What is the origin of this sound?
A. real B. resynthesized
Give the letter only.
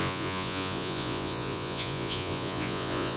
B